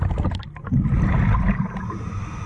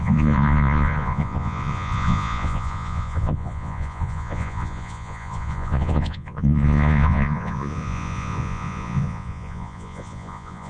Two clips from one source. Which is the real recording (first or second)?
first